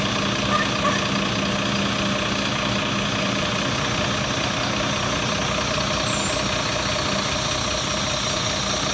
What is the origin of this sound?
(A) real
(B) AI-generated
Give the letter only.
A